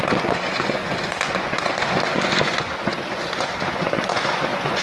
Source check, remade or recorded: remade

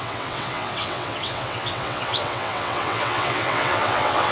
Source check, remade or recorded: remade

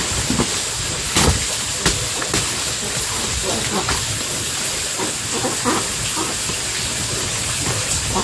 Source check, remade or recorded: recorded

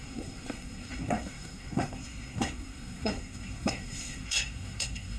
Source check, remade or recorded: remade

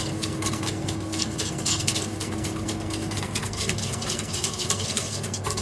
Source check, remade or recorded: remade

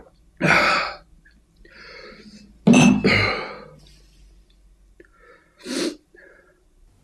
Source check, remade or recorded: recorded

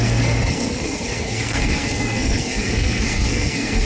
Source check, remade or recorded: remade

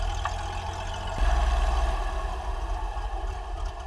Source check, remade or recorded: recorded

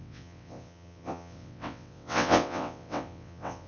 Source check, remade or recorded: remade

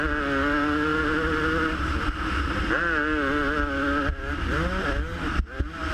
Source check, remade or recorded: recorded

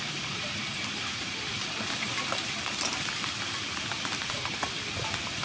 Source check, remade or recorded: remade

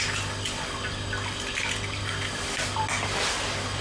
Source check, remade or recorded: recorded